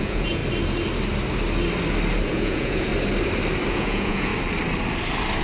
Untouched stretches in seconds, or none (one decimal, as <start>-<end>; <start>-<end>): 0.4-2.3; 2.9-3.7; 4.3-5.4